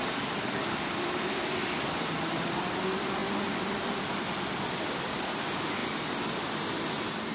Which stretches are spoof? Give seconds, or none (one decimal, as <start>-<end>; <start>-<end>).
0.0-5.8; 6.8-7.3